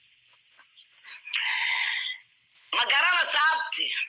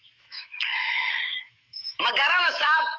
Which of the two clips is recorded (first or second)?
first